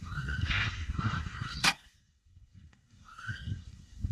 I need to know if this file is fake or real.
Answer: fake